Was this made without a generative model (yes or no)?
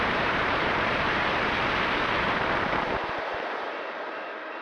no